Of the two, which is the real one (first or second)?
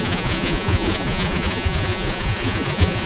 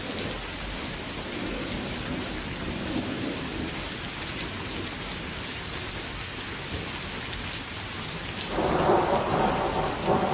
second